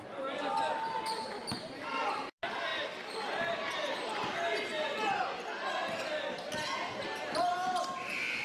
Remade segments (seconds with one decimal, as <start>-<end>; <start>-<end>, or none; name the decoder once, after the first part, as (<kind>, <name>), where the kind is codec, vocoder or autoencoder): none